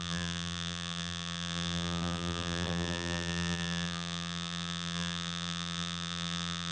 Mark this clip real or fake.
fake